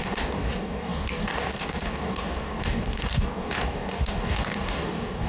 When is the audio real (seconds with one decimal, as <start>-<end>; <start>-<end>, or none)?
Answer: none